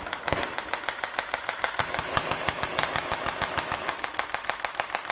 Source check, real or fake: fake